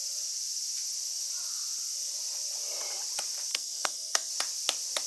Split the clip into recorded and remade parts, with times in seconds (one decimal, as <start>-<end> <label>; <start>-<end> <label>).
0.0-3.5 recorded; 3.5-4.3 remade; 4.3-5.1 recorded